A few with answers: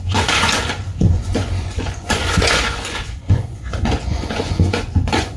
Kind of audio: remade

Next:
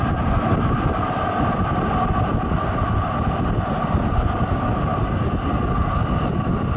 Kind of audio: recorded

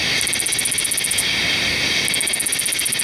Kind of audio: recorded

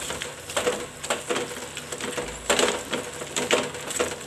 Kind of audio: recorded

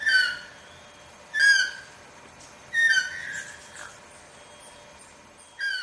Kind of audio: recorded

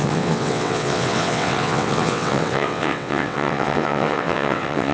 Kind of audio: remade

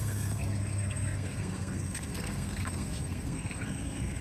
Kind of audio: remade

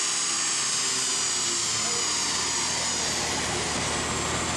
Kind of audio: recorded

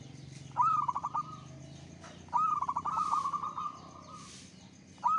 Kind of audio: recorded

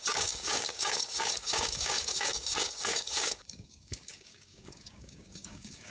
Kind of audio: remade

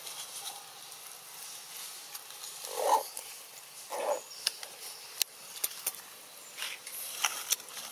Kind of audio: recorded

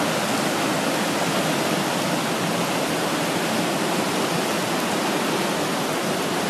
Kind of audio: recorded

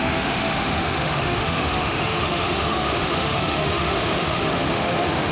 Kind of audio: remade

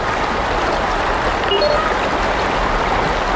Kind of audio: recorded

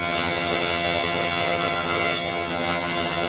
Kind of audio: remade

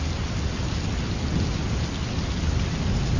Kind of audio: recorded